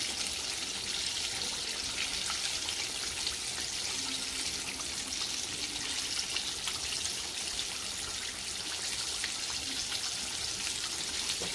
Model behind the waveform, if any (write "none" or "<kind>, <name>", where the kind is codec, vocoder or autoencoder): none